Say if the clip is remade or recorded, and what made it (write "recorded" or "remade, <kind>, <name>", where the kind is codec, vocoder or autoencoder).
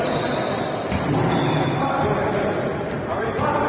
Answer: remade, vocoder, BigVGAN v2